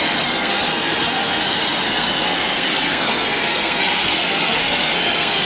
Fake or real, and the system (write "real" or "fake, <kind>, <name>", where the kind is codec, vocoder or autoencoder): fake, codec, SNAC